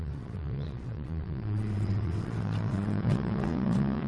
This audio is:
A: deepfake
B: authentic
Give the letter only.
A